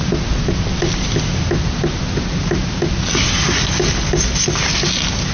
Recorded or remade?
recorded